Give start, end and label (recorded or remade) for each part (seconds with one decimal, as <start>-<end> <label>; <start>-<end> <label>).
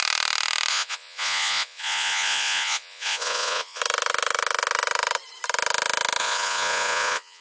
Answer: 0.0-0.7 recorded; 0.7-3.8 remade; 3.8-6.2 recorded; 6.2-7.4 remade